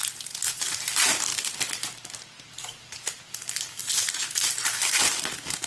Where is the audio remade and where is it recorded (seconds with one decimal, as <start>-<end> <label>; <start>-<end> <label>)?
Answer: 0.0-1.3 remade; 1.3-2.4 recorded; 2.4-5.7 remade